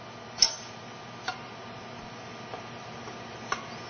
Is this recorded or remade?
recorded